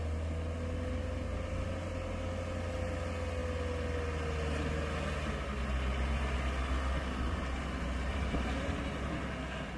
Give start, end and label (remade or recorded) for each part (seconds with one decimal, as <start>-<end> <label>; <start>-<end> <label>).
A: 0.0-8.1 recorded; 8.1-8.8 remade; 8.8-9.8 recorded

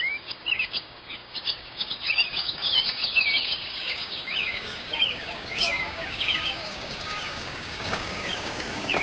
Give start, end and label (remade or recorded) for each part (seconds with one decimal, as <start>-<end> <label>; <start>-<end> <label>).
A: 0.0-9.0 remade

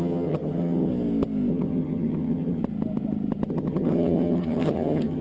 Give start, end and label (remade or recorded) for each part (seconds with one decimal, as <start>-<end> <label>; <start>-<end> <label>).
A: 0.0-0.9 remade; 0.9-1.5 recorded; 1.5-2.6 remade; 2.6-3.5 recorded; 3.5-5.2 remade